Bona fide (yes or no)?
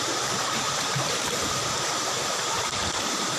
no